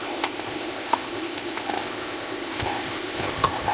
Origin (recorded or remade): remade